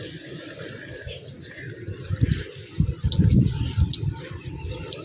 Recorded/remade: remade